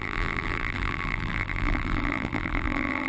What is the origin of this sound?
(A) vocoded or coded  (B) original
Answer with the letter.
A